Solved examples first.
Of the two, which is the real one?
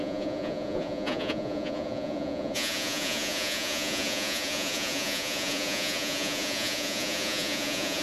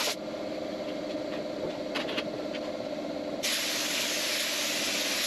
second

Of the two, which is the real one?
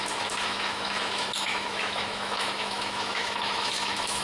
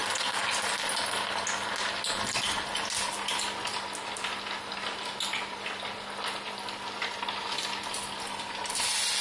second